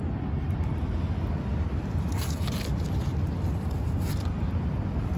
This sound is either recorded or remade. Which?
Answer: recorded